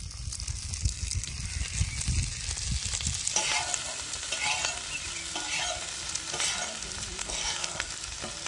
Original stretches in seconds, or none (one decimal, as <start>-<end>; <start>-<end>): 0.0-0.8; 1.3-7.2; 7.9-8.5